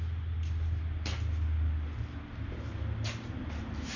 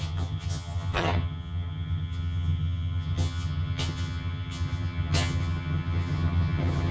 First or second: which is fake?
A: second